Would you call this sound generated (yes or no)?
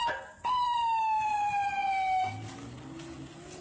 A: no